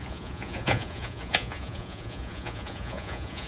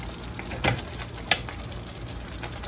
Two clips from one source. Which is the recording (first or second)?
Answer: second